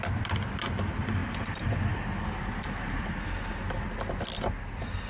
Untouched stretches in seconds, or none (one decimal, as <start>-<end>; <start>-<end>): 0.0-5.1

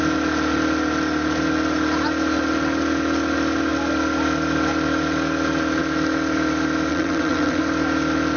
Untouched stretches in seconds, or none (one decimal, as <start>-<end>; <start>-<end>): 0.0-6.9; 7.6-8.4

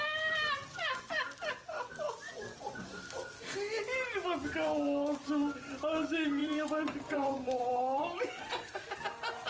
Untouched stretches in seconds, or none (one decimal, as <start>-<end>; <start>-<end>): 0.0-6.4; 9.0-9.5

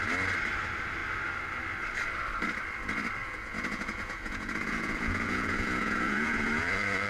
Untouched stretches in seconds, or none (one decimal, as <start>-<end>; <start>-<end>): 0.0-3.2

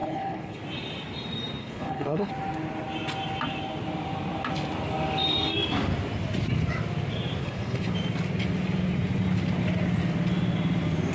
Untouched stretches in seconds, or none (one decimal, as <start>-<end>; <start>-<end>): 0.6-1.6; 2.3-7.4; 7.9-11.1

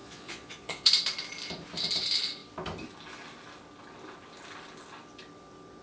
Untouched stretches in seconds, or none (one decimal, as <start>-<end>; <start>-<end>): 0.9-5.8

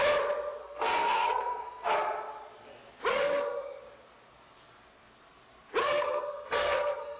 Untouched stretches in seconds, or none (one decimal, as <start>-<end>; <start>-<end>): 0.0-0.6; 1.9-3.1; 3.8-5.8

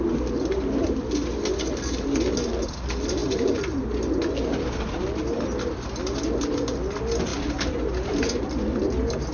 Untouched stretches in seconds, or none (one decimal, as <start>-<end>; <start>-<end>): 0.0-9.3